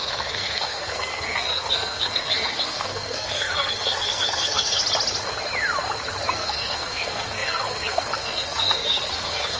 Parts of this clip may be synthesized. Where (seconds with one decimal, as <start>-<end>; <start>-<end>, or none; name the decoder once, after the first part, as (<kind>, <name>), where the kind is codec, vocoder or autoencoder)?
0.0-4.8 (codec, SNAC); 6.3-9.6